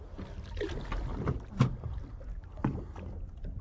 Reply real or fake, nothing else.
real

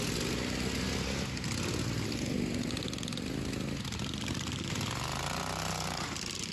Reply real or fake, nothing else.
real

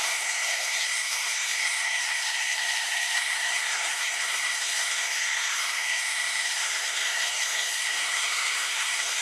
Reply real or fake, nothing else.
fake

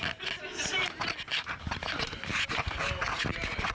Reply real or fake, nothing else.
real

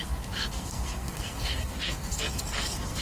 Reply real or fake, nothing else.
fake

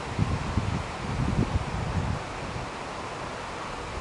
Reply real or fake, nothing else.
real